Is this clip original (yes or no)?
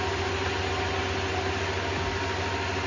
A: yes